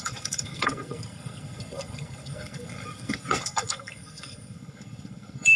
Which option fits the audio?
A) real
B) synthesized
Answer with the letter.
B